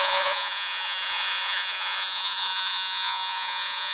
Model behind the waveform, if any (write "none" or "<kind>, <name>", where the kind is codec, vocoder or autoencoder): vocoder, Vocos